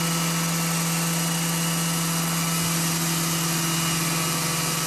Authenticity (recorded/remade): recorded